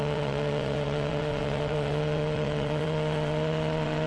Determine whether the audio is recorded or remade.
remade